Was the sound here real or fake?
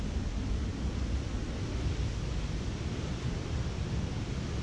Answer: real